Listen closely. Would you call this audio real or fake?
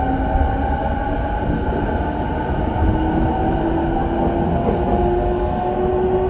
real